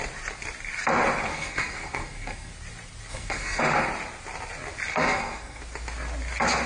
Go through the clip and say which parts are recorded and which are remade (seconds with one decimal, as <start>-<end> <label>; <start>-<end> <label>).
0.0-1.3 recorded; 1.3-2.5 remade; 2.5-3.1 recorded; 3.1-3.6 remade; 3.6-4.9 recorded; 4.9-5.6 remade; 5.6-6.7 recorded

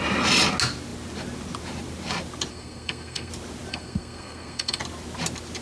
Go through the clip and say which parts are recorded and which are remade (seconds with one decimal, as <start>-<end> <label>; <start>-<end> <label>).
0.0-2.5 recorded; 2.5-3.3 remade; 3.3-3.7 recorded; 3.7-4.8 remade; 4.8-5.6 recorded

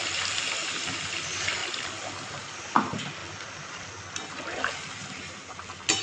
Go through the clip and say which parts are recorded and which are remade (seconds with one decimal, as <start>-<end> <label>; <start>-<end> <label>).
0.0-6.0 recorded

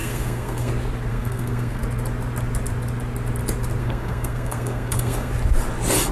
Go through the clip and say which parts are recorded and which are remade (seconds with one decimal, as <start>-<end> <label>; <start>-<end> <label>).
0.0-0.7 remade; 0.7-1.1 recorded; 1.1-1.8 remade; 1.8-3.8 recorded; 3.8-5.3 remade; 5.3-6.1 recorded

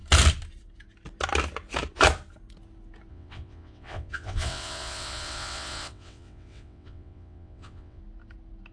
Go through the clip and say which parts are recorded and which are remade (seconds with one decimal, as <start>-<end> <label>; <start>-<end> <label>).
0.0-3.1 recorded; 3.1-8.0 remade; 8.0-8.7 recorded